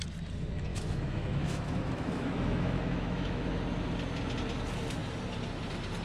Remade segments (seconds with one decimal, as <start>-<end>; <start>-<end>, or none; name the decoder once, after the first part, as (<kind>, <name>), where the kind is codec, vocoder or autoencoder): 0.7-3.6 (autoencoder, DAC-VAE)